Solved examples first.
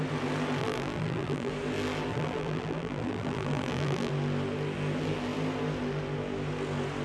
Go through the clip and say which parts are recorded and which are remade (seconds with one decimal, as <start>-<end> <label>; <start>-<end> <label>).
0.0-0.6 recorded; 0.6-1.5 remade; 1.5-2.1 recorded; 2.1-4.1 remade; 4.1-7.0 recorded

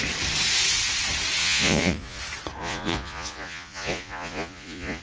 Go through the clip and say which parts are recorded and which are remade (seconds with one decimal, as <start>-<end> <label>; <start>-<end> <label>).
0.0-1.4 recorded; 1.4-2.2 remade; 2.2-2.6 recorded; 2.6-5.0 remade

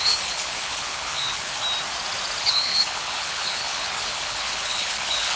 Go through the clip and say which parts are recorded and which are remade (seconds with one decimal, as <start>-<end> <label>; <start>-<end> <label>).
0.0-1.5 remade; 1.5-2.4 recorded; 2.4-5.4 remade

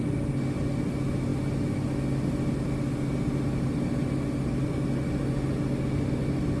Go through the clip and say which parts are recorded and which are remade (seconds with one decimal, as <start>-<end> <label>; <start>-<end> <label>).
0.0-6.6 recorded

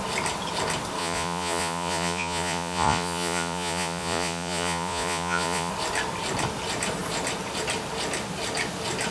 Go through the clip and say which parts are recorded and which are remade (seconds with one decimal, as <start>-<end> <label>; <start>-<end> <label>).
0.0-1.0 recorded; 1.0-5.7 remade; 5.7-9.1 recorded

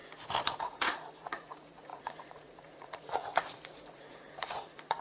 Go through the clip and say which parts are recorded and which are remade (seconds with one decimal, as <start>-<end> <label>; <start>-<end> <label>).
0.0-0.6 recorded; 0.6-5.0 remade

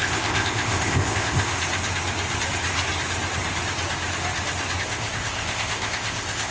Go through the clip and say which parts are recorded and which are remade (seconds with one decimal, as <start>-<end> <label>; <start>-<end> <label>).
0.0-1.5 remade; 1.5-4.8 recorded; 4.8-6.5 remade